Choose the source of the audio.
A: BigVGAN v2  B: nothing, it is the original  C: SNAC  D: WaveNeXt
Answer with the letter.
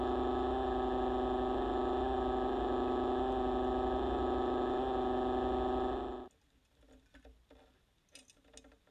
B